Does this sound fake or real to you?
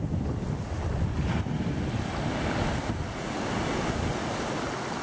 real